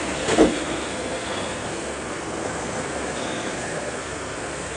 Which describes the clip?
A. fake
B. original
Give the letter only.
A